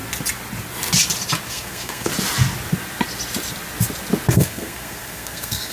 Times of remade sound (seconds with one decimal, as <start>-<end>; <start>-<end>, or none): 1.5-2.1; 4.3-5.7